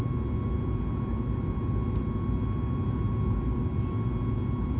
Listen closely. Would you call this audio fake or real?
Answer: real